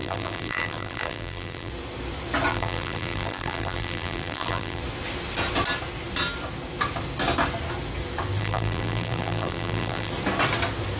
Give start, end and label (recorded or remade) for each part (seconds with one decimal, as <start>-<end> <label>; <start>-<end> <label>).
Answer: 0.0-1.7 remade; 1.7-2.5 recorded; 2.5-4.8 remade; 4.8-8.4 recorded; 8.4-10.1 remade; 10.1-11.0 recorded